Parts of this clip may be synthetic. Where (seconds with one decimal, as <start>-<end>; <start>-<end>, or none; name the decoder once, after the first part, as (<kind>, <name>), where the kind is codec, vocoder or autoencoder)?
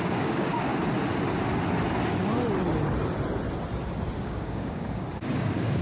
0.0-0.7 (codec, DAC); 4.2-5.8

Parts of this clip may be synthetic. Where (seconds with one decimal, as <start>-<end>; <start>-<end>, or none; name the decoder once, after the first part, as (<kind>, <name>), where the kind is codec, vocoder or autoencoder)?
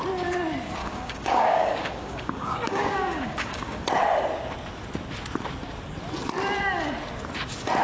0.8-3.9 (codec, DAC)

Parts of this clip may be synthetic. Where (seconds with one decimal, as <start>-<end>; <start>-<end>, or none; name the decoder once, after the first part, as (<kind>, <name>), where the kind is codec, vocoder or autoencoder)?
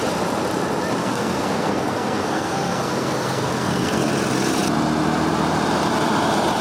1.0-4.1 (codec, SNAC)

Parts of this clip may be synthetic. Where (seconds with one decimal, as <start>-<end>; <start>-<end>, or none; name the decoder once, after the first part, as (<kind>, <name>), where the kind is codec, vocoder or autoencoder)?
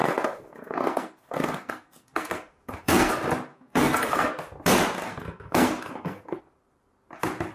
0.0-3.1 (codec, SNAC); 3.5-4.3; 5.0-6.4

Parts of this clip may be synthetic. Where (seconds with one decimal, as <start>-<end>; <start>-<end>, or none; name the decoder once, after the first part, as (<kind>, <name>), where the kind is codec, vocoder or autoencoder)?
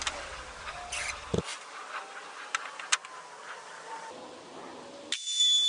none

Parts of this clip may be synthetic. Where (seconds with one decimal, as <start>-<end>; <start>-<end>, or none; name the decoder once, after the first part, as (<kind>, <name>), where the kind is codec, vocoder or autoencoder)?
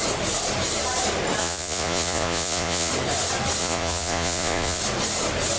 1.4-2.9 (vocoder, Vocos); 3.6-4.8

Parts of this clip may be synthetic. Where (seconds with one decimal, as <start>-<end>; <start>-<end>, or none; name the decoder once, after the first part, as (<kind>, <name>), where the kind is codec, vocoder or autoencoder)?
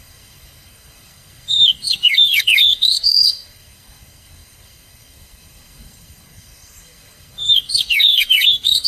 0.0-8.9 (codec, SNAC)